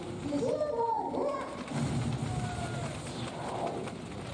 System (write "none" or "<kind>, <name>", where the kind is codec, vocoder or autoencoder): none